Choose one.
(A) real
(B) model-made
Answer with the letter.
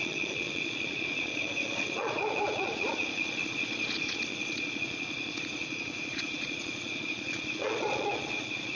B